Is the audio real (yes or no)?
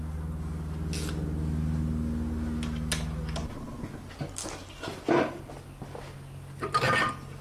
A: yes